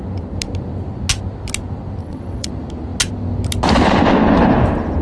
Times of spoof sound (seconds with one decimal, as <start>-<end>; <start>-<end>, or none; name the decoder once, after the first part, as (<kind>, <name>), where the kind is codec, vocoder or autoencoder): 2.0-2.5 (vocoder, WaveNeXt)

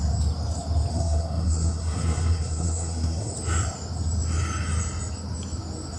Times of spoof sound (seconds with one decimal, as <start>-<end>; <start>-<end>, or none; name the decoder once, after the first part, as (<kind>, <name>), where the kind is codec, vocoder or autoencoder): 0.9-3.3 (codec, SNAC)

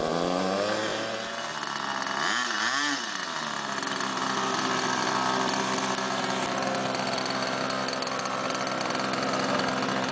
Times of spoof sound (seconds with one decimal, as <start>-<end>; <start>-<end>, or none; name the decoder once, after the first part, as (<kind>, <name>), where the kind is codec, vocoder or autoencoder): none

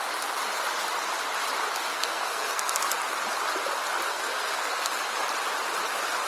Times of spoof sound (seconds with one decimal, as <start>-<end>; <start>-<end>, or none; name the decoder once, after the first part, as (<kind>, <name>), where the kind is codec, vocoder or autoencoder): 1.9-2.8 (codec, SNAC); 4.1-4.9

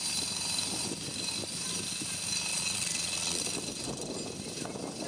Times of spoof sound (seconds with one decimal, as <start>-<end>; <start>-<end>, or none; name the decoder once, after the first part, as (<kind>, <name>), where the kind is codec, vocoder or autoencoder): 2.5-3.4 (vocoder, Vocos)

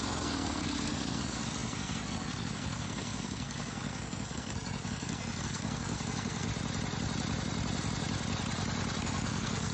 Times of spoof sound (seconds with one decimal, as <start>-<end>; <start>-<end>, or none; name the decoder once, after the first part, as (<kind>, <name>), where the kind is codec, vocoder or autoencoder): 0.0-6.5 (codec, SNAC); 9.0-9.7